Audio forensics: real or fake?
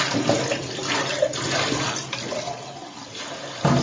real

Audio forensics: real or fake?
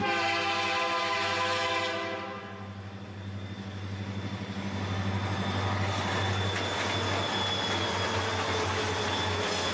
real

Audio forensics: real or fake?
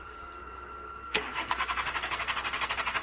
fake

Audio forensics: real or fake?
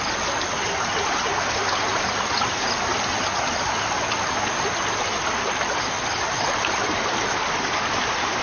real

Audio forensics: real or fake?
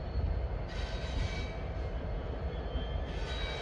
real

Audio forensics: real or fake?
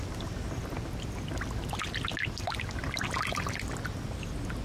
real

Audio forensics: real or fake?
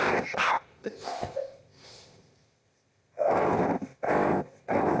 fake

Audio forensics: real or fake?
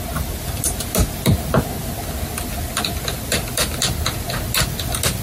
real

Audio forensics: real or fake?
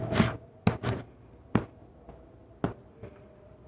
real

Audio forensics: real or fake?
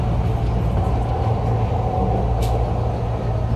real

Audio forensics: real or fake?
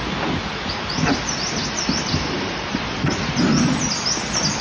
real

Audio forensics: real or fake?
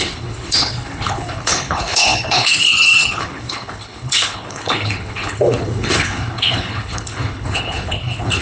fake